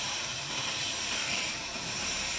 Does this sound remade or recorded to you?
remade